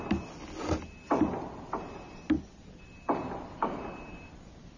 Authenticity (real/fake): real